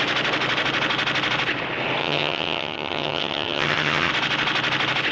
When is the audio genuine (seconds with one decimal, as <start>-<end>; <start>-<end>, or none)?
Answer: 0.0-2.0; 4.1-5.1